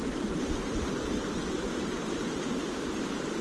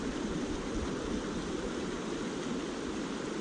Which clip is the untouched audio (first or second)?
first